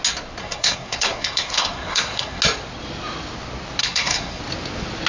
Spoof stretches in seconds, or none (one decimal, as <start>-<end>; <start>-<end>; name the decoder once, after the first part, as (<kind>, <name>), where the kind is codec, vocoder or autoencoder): 0.4-2.4 (codec, SNAC); 3.8-4.4